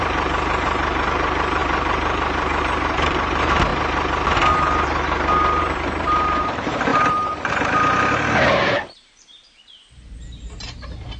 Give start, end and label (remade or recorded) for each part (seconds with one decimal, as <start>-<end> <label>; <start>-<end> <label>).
0.0-3.7 remade; 3.7-5.6 recorded; 5.6-11.2 remade